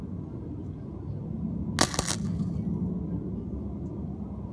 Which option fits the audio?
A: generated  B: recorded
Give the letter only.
B